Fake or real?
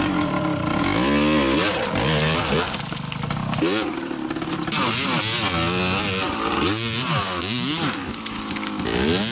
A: real